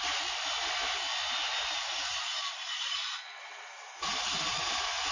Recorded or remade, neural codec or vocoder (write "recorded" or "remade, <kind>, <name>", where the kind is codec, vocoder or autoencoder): recorded